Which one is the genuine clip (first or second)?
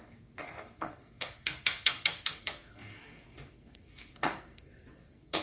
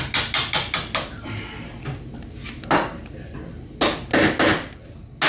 second